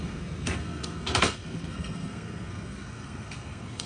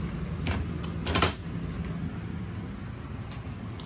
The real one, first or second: second